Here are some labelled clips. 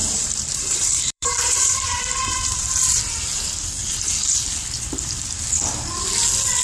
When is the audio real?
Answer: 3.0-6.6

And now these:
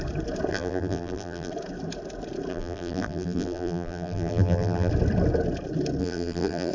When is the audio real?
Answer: 0.0-0.5; 1.5-2.5; 4.9-6.0

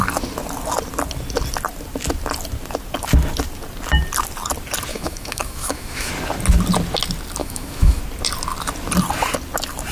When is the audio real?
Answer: 0.0-4.9; 6.1-7.4; 8.0-9.9

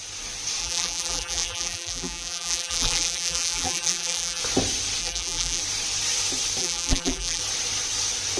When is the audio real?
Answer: 0.0-0.6; 4.4-5.0; 5.6-6.6; 7.4-8.4

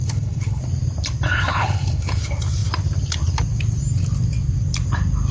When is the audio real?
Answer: 0.6-1.5; 2.2-5.3

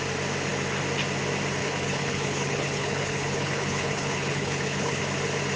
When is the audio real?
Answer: 0.0-1.6; 5.0-5.6